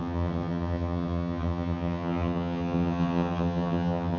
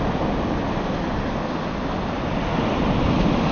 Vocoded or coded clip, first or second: first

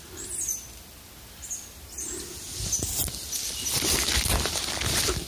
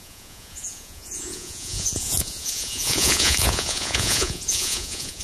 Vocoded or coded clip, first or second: second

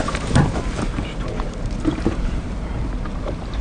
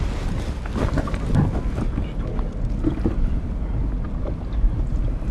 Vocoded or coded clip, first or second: first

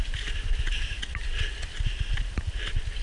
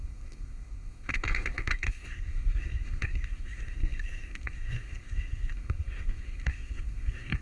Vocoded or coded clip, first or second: second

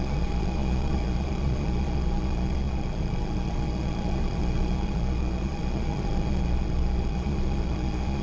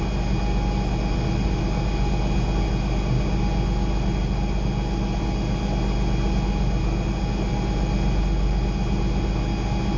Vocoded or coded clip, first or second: first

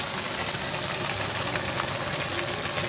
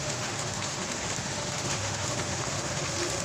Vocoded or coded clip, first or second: second